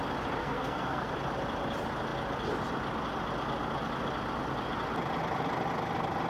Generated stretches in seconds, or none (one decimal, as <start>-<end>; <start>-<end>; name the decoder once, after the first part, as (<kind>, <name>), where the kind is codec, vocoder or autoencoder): 0.4-1.1 (codec, SNAC)